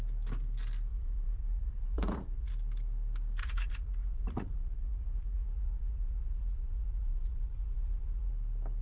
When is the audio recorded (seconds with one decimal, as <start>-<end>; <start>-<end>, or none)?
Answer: 0.0-0.9; 2.5-3.4; 8.3-8.8